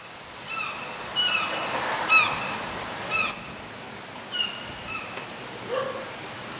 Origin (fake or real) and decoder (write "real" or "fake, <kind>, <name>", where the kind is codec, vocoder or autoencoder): real